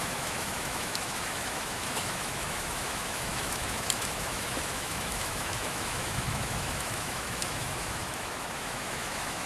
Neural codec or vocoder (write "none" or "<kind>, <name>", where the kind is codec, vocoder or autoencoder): autoencoder, DAC-VAE